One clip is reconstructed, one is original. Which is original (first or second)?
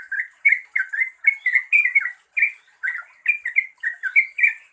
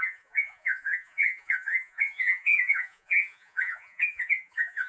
first